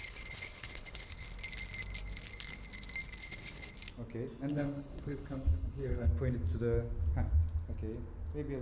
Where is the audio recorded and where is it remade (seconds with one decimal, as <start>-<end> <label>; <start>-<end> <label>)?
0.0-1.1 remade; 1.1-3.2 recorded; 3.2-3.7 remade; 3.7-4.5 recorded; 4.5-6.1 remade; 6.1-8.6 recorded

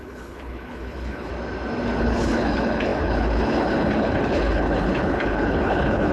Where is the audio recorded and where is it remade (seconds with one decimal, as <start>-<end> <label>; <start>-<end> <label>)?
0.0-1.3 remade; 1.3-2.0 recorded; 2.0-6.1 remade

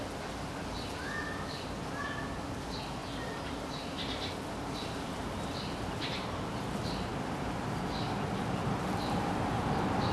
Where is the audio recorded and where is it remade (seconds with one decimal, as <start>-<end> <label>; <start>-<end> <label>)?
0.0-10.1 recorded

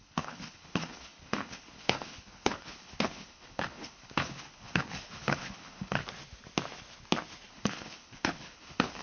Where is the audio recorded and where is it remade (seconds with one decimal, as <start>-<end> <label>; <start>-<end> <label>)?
0.0-6.0 remade; 6.0-7.5 recorded; 7.5-9.0 remade

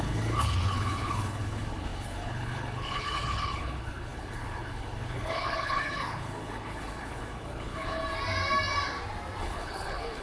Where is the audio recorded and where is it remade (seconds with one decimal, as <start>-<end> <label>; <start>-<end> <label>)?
0.0-8.0 remade; 8.0-9.4 recorded; 9.4-10.2 remade

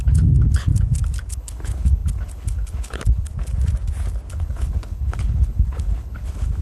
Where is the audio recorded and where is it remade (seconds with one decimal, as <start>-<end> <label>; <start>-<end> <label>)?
0.0-0.7 remade; 0.7-1.3 recorded; 1.3-3.3 remade; 3.3-4.3 recorded; 4.3-6.6 remade